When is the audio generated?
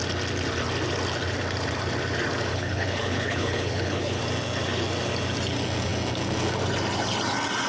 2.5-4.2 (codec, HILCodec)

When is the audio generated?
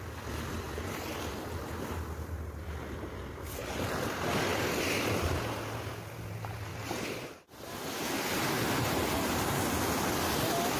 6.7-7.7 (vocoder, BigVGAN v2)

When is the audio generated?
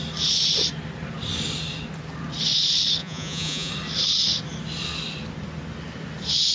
3.0-3.7 (vocoder, Vocos)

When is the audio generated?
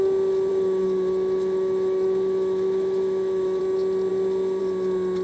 0.5-3.6 (autoencoder, DAC-VAE)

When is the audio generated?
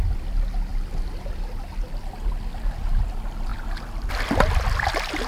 none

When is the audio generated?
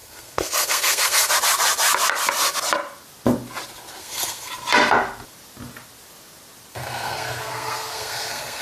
0.0-1.3 (codec, SNAC); 4.0-4.5; 6.7-8.6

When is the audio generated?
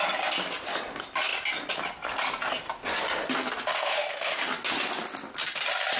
3.7-4.4 (autoencoder, DAC-VAE)